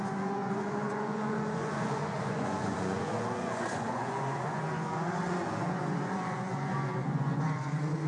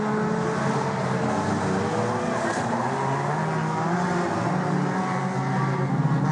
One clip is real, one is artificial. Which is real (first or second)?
second